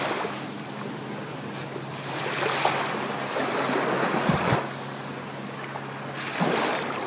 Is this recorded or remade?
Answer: recorded